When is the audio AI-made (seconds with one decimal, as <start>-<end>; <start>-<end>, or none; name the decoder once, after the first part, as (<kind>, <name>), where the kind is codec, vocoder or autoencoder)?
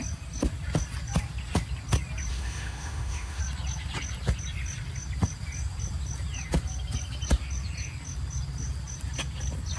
2.3-3.4 (autoencoder, DAC-VAE)